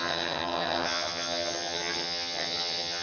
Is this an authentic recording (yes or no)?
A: no